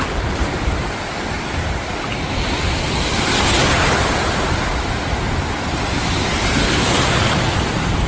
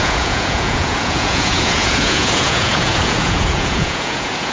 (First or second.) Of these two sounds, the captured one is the first